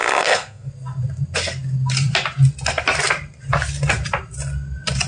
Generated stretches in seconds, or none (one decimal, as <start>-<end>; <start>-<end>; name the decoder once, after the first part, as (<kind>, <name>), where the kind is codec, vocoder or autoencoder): 0.0-0.7 (codec, SNAC)